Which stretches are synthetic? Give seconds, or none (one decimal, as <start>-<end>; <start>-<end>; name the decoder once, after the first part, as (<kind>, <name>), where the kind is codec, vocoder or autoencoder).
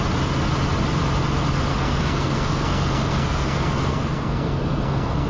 1.7-5.3 (codec, SNAC)